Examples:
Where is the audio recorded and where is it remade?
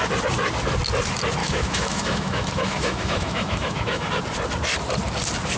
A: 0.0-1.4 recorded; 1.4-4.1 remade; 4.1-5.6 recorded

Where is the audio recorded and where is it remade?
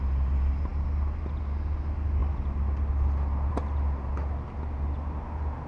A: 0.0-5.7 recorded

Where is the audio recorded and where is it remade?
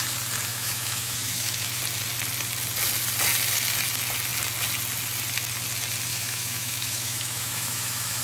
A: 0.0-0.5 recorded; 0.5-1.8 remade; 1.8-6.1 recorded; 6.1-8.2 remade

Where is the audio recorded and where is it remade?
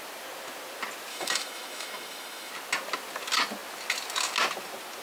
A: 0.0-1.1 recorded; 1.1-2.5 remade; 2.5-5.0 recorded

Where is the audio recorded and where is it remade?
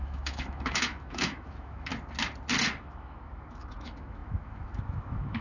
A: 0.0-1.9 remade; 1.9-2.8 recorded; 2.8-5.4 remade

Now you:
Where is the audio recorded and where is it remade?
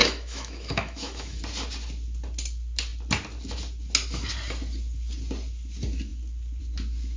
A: 0.0-1.4 remade; 1.4-7.2 recorded